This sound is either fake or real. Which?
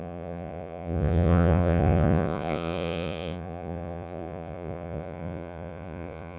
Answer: fake